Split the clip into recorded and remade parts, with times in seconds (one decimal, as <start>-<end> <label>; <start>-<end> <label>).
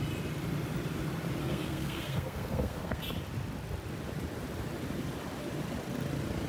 0.0-1.4 recorded; 1.4-3.0 remade; 3.0-6.5 recorded